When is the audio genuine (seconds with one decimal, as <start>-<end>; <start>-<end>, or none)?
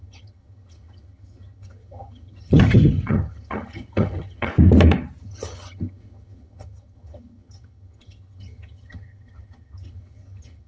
4.5-5.2